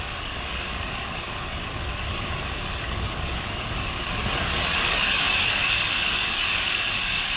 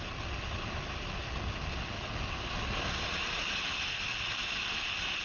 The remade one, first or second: first